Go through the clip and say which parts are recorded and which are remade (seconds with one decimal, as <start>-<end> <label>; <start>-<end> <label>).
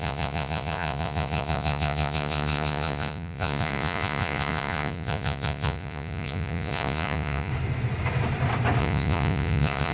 0.0-7.5 remade; 7.5-8.8 recorded; 8.8-9.9 remade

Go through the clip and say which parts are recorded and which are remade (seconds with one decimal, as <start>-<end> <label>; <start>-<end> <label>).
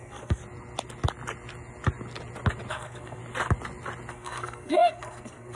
0.0-0.4 remade; 0.4-2.7 recorded; 2.7-3.2 remade; 3.2-4.1 recorded; 4.1-5.5 remade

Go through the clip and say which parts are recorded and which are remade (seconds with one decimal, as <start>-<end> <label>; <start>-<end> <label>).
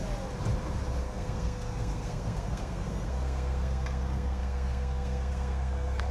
0.0-1.0 recorded; 1.0-6.1 remade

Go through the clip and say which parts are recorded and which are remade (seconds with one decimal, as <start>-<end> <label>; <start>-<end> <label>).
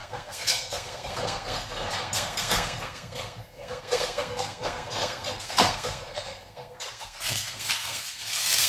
0.0-8.7 remade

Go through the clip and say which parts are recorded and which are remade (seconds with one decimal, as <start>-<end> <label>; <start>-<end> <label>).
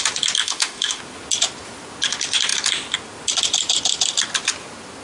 0.0-0.4 recorded; 0.4-1.0 remade; 1.0-5.0 recorded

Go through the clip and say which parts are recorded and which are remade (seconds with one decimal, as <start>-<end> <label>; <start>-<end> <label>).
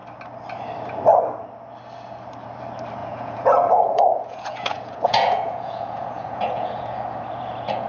0.0-3.0 recorded; 3.0-7.9 remade